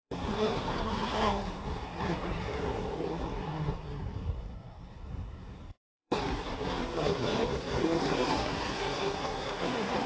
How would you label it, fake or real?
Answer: fake